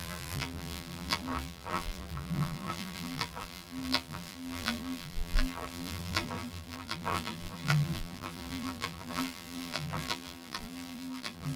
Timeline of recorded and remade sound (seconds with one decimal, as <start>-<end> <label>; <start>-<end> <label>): 0.0-11.6 remade